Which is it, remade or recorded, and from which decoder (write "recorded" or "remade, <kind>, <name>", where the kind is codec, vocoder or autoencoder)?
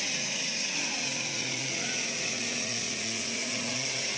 remade, vocoder, Vocos